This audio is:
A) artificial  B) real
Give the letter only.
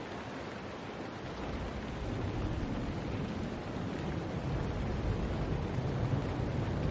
B